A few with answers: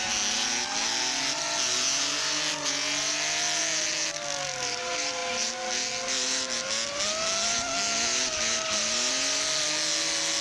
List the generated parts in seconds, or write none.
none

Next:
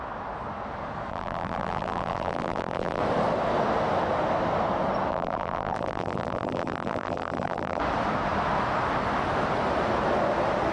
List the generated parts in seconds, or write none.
1.1-3.0 (vocoder, BigVGAN v2); 5.1-7.8

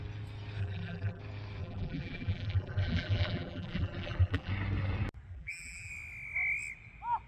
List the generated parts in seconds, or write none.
0.6-1.2 (vocoder, BigVGAN v2); 1.6-4.5; 5.3-5.9

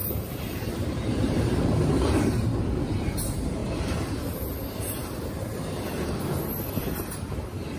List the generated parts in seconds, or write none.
0.0-1.8 (vocoder, BigVGAN v2); 5.0-6.2

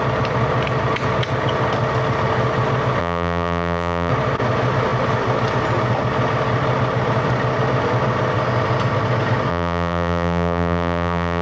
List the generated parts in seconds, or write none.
3.0-4.1 (vocoder, BigVGAN v2); 9.5-11.4

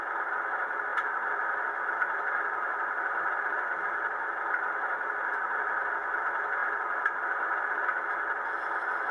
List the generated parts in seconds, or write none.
0.9-6.1 (vocoder, BigVGAN v2); 6.6-7.2